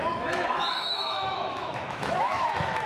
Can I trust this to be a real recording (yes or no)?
no